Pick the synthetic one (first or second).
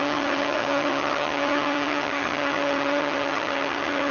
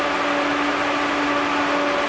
first